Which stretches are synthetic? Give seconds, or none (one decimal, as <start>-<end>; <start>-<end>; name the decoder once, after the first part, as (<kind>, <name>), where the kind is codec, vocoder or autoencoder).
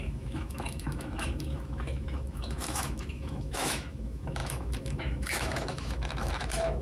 0.0-6.8 (autoencoder, DAC-VAE)